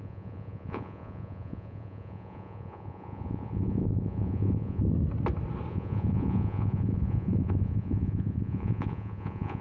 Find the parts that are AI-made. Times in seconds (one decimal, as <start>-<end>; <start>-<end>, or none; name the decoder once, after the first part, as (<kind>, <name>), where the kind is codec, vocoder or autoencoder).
0.0-4.8 (vocoder, Vocos); 5.7-9.6